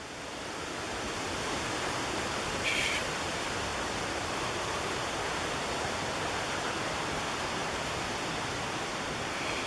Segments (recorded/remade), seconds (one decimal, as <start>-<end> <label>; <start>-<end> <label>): 0.0-9.7 remade